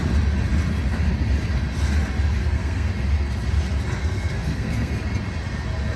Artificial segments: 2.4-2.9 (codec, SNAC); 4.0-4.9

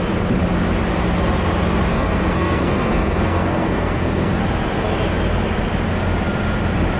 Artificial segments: 1.9-4.4 (codec, SNAC)